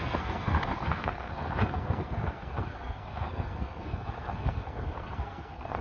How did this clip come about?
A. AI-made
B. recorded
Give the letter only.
A